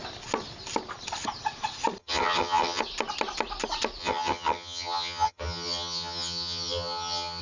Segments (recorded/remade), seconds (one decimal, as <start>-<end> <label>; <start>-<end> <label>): 0.0-2.0 recorded; 2.0-2.8 remade; 2.8-4.0 recorded; 4.0-7.4 remade